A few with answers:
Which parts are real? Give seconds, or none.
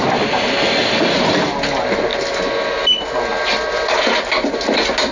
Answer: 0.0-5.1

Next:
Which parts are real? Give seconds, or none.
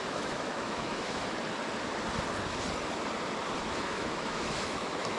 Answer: 1.2-3.6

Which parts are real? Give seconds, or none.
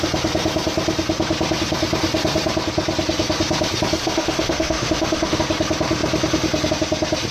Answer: 0.0-4.0; 5.4-7.3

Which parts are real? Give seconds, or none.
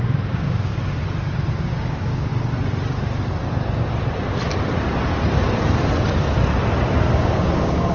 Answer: 0.7-1.6; 2.3-7.0